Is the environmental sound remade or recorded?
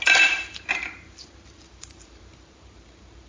remade